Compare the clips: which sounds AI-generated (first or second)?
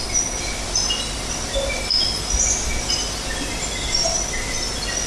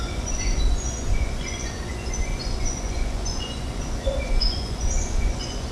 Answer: second